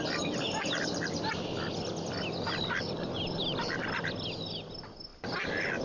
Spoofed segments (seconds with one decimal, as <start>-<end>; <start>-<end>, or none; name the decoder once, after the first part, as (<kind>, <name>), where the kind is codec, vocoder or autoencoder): 0.0-5.8 (vocoder, BigVGAN v2)